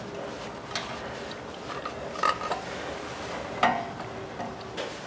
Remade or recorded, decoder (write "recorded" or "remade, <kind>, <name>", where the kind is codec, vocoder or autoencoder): recorded